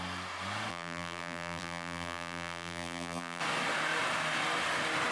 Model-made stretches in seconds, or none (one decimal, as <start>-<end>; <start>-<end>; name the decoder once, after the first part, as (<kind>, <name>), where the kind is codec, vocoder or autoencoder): 0.7-3.4 (vocoder, BigVGAN v2)